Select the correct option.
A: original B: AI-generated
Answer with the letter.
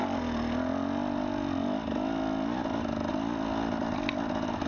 A